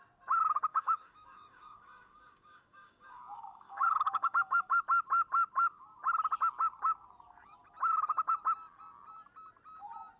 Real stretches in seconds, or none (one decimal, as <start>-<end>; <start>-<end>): 0.0-0.7; 4.8-10.2